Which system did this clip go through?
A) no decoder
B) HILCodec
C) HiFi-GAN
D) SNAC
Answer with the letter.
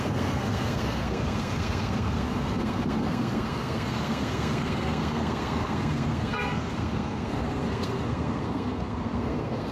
D